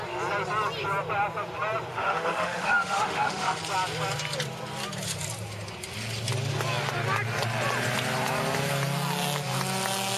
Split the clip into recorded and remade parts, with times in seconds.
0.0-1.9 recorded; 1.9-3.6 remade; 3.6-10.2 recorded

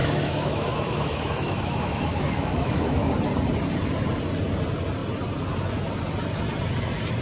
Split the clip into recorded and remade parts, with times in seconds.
0.0-3.1 remade; 3.1-7.2 recorded

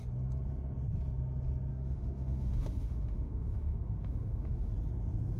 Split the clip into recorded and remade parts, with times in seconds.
0.0-1.7 recorded; 1.7-4.7 remade; 4.7-5.4 recorded

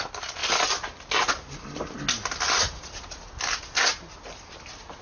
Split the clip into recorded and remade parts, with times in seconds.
0.0-5.0 recorded

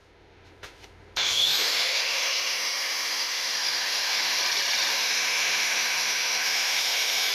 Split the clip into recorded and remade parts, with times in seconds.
0.0-4.4 remade; 4.4-4.9 recorded; 4.9-7.3 remade

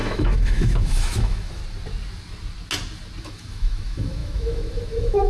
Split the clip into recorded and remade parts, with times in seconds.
0.0-1.6 remade; 1.6-3.2 recorded; 3.2-5.3 remade

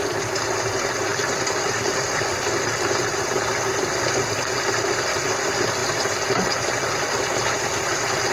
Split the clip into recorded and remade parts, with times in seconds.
0.0-8.3 recorded

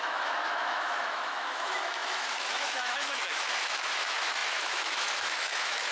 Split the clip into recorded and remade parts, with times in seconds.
0.0-5.9 remade